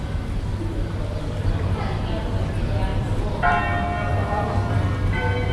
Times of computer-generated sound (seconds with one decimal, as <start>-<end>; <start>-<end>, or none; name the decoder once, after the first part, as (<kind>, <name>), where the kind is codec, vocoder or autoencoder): 2.9-3.6 (vocoder, BigVGAN v2); 4.1-4.9